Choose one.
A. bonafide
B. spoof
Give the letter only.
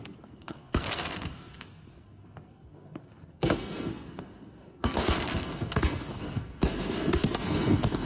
B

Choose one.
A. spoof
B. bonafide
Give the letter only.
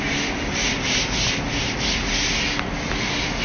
B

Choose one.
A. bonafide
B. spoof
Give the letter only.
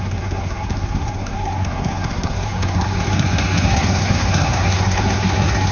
B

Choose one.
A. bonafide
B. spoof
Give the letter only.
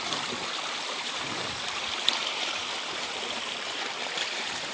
B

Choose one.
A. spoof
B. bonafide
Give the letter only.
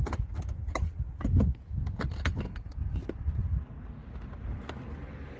B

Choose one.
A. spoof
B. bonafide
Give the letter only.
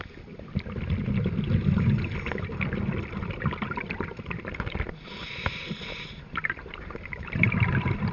B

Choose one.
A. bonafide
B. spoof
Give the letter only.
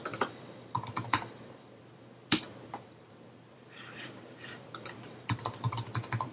B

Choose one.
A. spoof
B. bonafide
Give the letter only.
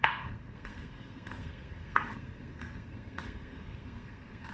A